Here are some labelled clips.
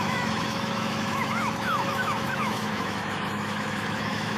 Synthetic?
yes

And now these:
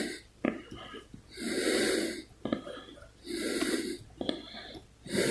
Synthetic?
no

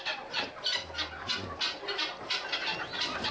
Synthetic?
no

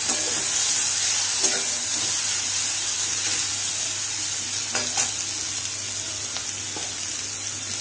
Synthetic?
no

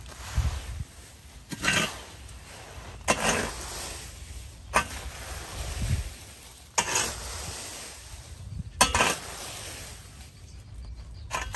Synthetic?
no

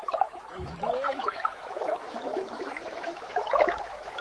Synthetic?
yes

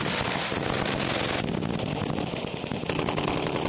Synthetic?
no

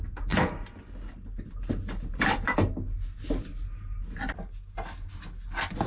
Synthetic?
no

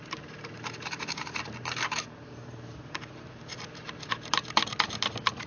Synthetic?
yes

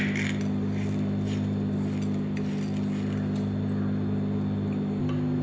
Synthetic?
no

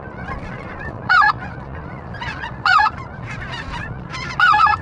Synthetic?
yes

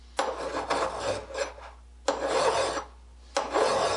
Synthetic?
no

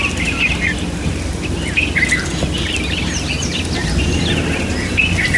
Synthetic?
no